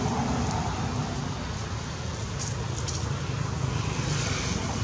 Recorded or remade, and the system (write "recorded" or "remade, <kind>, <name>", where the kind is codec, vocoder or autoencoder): recorded